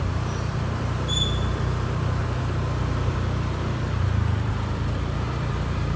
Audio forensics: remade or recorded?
remade